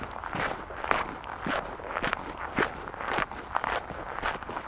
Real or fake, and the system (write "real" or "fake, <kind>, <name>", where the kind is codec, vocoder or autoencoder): real